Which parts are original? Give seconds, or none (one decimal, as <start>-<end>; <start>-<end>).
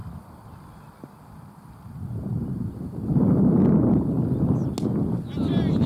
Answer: 3.4-5.9